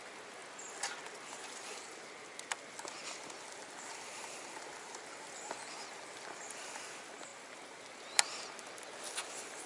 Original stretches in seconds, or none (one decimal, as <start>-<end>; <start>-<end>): 0.0-9.7

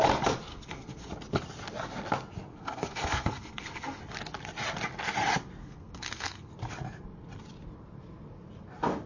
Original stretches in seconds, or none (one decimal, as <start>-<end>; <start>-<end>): 0.0-0.5; 1.1-2.5; 4.0-5.6; 6.5-9.1

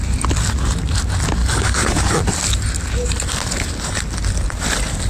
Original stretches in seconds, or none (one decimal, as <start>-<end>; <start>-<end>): 0.0-1.4; 2.2-5.1

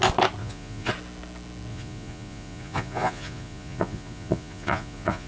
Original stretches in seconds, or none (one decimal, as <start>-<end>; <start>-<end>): 0.0-0.4; 0.9-1.7

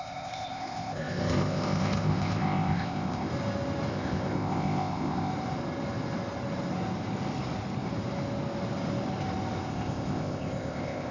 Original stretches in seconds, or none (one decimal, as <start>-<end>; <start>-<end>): 3.3-3.9; 5.3-9.7

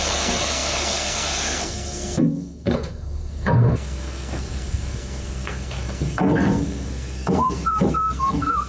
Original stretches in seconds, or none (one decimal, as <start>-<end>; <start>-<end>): none

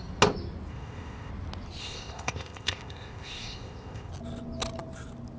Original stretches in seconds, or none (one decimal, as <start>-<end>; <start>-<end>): 0.0-0.7; 1.3-1.8; 4.1-5.4

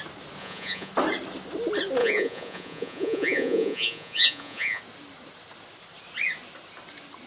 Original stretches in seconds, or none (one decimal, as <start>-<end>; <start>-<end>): 0.0-0.4; 0.9-2.0; 4.8-7.3